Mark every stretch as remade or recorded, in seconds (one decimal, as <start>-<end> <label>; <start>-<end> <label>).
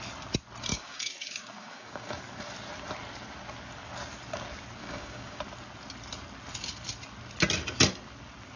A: 0.0-0.7 recorded; 0.7-2.2 remade; 2.2-4.8 recorded; 4.8-5.4 remade; 5.4-8.6 recorded